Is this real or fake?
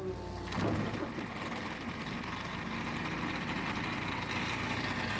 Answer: real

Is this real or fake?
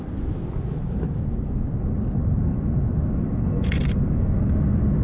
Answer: real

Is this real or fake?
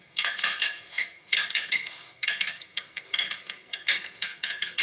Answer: fake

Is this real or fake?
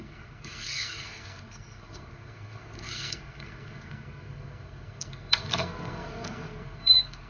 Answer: fake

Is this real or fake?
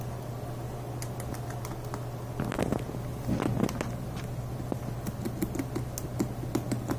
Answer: real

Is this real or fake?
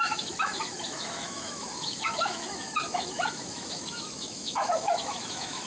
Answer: fake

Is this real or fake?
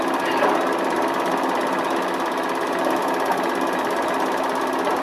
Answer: real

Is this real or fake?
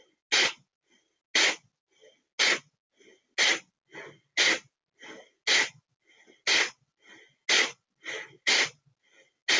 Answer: real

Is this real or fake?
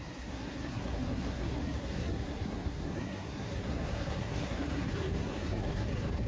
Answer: fake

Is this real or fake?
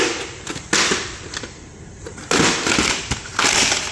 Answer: real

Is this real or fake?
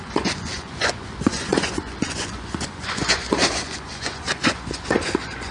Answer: fake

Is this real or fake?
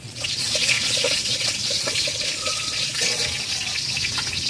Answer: fake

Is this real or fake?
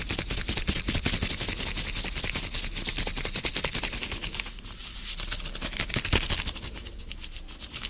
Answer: real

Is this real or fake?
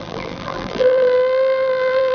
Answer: fake